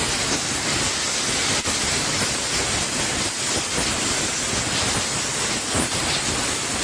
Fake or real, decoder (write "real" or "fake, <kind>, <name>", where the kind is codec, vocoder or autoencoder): real